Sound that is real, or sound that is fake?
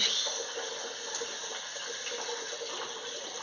real